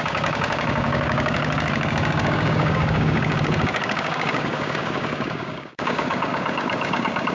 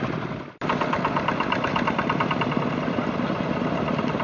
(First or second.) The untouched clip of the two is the second